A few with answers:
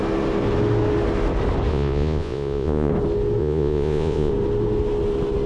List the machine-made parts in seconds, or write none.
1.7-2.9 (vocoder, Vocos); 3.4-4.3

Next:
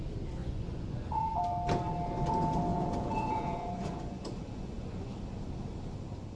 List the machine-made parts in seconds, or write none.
0.4-1.4 (vocoder, Vocos); 2.7-5.1